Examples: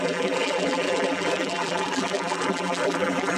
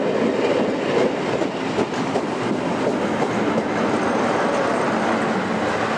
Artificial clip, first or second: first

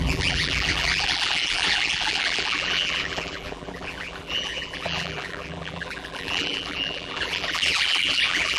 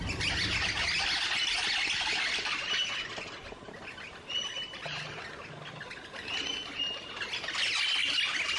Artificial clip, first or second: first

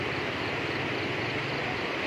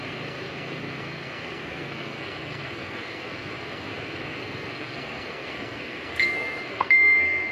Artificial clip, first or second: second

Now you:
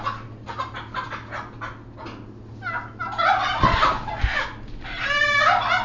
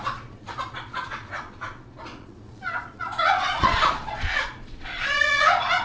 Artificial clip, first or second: second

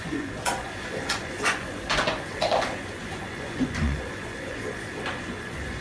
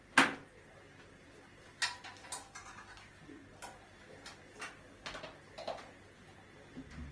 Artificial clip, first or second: first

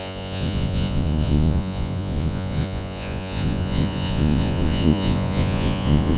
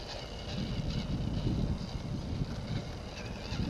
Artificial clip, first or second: first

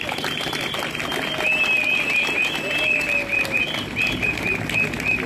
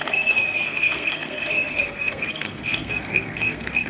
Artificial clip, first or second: second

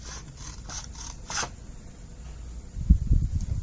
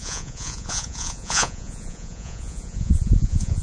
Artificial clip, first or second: second